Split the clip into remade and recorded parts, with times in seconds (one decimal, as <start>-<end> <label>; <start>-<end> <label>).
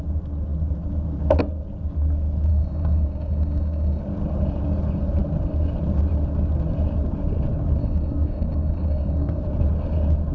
0.0-2.5 recorded; 2.5-4.0 remade; 4.0-7.8 recorded; 7.8-9.4 remade; 9.4-10.3 recorded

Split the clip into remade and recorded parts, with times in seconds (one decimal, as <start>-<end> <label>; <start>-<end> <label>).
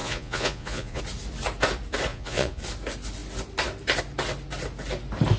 0.0-1.0 remade; 1.0-2.1 recorded; 2.1-2.6 remade; 2.6-5.4 recorded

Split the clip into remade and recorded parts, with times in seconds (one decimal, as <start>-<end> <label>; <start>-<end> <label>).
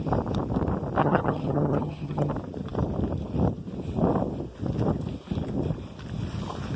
0.0-1.0 recorded; 1.0-2.3 remade; 2.3-6.8 recorded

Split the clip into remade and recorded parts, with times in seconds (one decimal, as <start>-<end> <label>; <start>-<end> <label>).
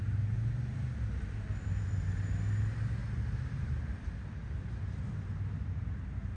0.0-3.0 recorded; 3.0-4.1 remade; 4.1-6.4 recorded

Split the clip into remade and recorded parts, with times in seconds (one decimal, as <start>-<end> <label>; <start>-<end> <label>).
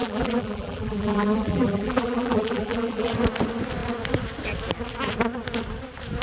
0.0-3.1 remade; 3.1-6.2 recorded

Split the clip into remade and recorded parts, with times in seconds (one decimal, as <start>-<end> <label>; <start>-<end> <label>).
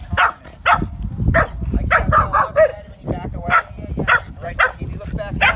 0.0-2.7 recorded; 2.7-3.3 remade; 3.3-5.6 recorded